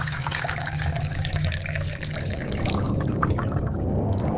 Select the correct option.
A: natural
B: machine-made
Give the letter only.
B